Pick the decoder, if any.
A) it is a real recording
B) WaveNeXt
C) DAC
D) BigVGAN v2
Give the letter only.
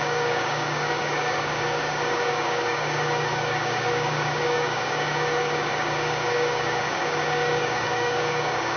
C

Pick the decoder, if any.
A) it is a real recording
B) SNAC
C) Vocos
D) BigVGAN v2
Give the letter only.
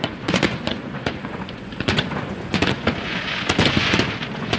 C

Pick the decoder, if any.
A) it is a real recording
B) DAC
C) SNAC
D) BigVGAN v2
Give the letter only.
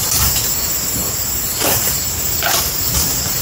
D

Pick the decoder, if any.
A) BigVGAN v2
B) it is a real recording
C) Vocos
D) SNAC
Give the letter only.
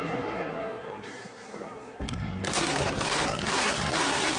D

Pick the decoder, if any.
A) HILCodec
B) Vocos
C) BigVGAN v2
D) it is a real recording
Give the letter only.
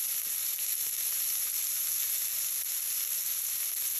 D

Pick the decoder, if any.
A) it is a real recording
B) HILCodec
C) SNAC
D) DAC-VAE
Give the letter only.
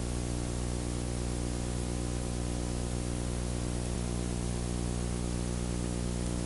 A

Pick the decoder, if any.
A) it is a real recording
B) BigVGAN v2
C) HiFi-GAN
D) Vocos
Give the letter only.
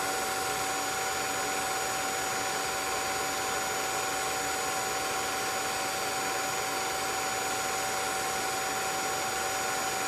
A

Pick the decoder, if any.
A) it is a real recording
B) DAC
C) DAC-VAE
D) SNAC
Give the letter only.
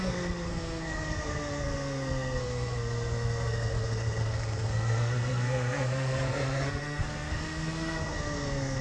D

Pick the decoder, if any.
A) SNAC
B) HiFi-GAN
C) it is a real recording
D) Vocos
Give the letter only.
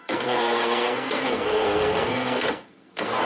A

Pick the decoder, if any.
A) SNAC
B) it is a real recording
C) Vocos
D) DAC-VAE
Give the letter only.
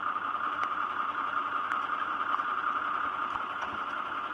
B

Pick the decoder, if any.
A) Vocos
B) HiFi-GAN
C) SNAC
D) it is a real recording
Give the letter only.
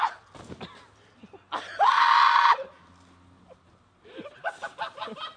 D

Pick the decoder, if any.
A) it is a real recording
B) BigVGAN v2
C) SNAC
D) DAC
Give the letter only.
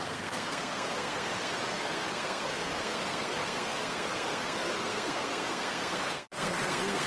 C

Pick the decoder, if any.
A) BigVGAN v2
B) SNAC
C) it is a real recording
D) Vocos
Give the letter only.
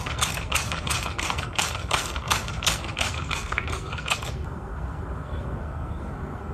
B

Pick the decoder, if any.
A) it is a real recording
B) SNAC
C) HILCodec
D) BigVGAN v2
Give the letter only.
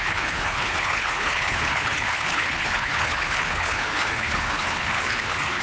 C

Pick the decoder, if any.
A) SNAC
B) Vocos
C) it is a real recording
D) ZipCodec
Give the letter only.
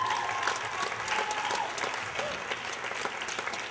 C